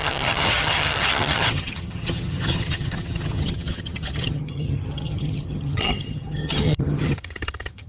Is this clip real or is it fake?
fake